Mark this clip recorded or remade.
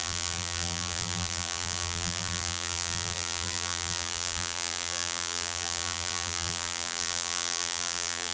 remade